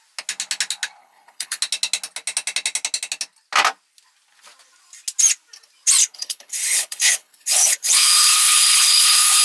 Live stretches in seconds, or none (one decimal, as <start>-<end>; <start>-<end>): 0.0-1.0; 1.6-6.0